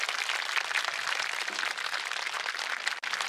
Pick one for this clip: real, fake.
real